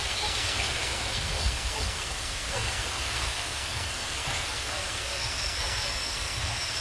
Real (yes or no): no